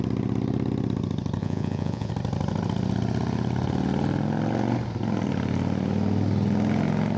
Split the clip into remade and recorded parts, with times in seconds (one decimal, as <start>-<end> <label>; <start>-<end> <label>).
0.0-1.4 recorded; 1.4-2.1 remade; 2.1-7.2 recorded